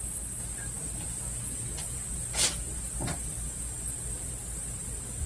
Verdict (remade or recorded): recorded